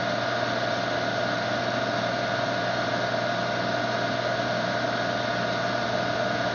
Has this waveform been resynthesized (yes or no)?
no